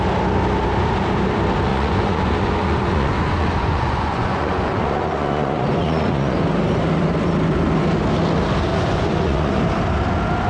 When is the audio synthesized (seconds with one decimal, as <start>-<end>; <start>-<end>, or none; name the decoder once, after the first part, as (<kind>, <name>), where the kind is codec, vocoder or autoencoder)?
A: 1.7-6.5 (vocoder, Vocos); 8.7-9.6